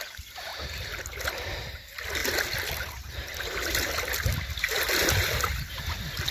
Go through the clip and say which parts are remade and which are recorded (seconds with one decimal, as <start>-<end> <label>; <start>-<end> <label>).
0.0-2.2 recorded; 2.2-6.3 remade